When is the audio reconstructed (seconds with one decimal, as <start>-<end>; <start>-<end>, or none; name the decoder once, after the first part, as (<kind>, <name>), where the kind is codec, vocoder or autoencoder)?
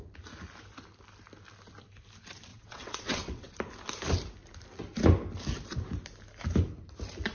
2.5-3.5 (vocoder, WaveNeXt)